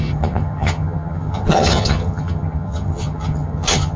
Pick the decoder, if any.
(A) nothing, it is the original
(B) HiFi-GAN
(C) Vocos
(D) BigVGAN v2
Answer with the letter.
B